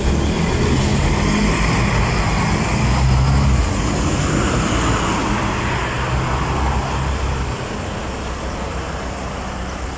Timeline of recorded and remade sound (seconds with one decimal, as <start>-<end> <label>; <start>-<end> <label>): 0.0-10.0 recorded